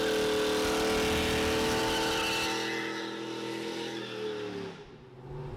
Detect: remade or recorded recorded